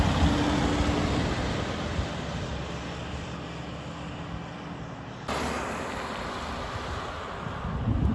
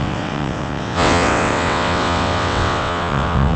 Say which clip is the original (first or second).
first